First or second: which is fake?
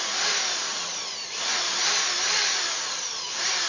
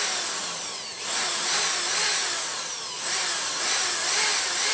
first